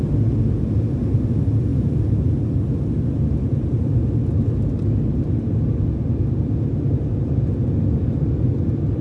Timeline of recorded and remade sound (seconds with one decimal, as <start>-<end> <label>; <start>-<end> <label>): 0.0-1.7 recorded; 1.7-2.4 remade; 2.4-9.0 recorded